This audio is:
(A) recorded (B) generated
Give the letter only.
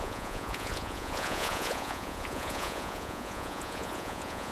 B